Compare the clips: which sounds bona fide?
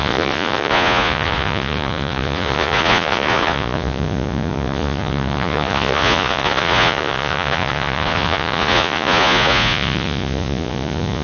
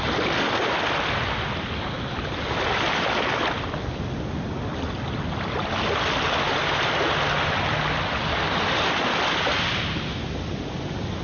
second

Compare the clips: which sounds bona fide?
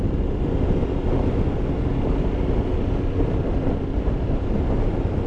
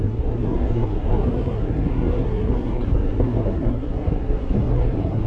first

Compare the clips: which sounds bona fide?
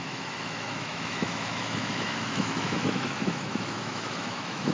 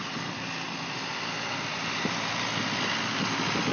second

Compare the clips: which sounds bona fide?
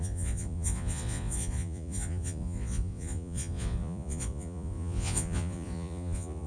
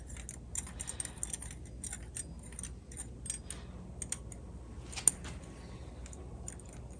second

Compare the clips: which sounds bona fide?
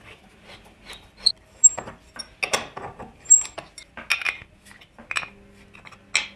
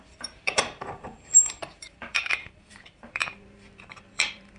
first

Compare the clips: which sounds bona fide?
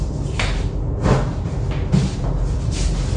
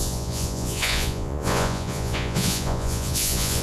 first